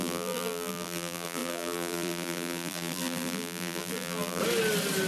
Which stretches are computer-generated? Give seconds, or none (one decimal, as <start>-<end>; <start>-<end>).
0.0-4.4